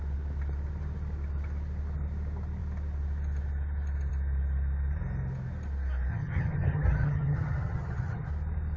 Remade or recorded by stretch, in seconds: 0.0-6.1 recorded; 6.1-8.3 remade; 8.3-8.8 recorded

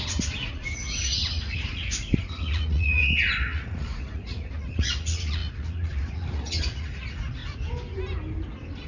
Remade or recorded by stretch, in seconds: 0.0-7.4 remade; 7.4-8.9 recorded